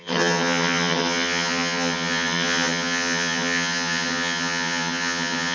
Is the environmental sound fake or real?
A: fake